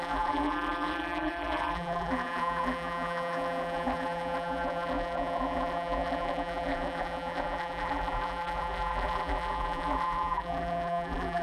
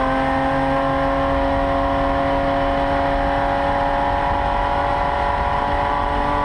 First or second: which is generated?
first